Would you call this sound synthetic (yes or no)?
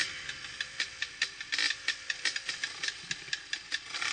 no